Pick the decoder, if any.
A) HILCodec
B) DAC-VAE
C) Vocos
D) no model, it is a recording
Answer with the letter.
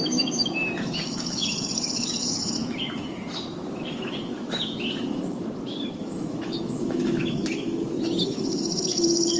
B